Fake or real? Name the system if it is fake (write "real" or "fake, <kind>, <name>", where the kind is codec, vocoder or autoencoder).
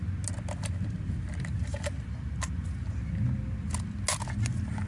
real